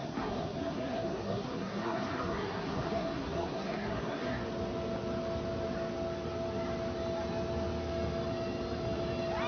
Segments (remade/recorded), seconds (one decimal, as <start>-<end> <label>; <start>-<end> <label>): 0.0-4.4 remade; 4.4-9.5 recorded